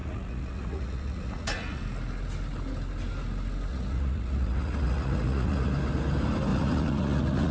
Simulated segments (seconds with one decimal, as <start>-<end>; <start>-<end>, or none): 0.0-1.8; 3.7-5.7; 6.5-7.5